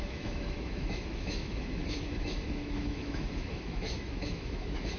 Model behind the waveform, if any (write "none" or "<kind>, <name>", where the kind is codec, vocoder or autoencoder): autoencoder, DAC-VAE